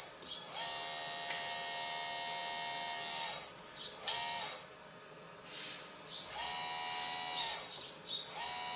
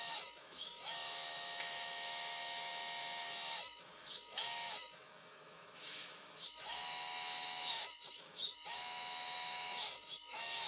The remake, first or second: second